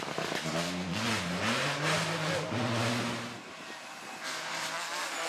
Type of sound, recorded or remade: recorded